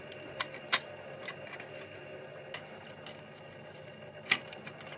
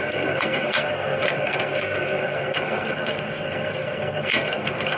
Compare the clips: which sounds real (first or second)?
first